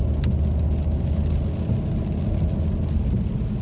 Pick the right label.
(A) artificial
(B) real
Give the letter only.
B